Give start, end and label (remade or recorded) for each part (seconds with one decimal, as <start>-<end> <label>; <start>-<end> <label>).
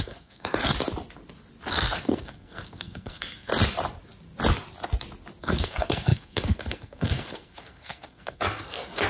0.0-0.7 remade; 0.7-1.7 recorded; 1.7-3.5 remade; 3.5-5.4 recorded; 5.4-9.1 remade